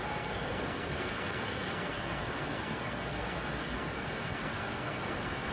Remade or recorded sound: remade